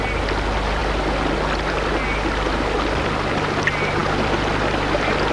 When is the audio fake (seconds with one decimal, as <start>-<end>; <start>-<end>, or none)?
none